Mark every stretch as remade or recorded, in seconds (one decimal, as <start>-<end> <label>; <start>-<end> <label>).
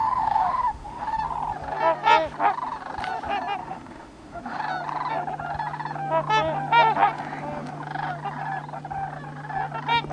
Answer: 0.0-1.2 remade; 1.2-3.6 recorded; 3.6-4.6 remade; 4.6-10.1 recorded